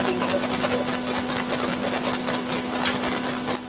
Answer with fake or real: real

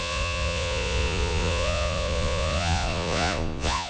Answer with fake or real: fake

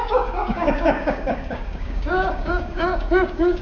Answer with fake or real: fake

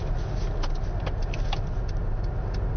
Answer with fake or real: real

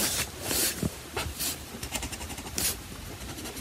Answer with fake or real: fake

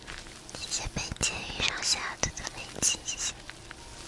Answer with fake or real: real